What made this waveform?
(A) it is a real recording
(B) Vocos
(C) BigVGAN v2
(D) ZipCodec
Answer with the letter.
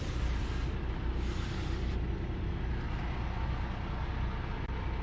A